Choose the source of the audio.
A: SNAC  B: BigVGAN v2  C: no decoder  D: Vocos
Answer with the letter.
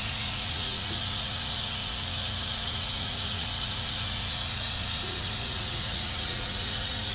D